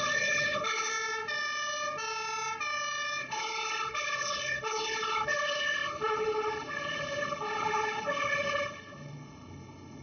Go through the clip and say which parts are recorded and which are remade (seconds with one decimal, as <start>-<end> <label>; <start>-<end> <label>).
0.0-0.9 remade; 0.9-3.2 recorded; 3.2-10.0 remade